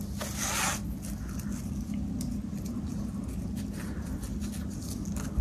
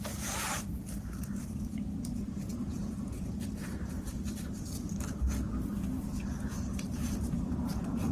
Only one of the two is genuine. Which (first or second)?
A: first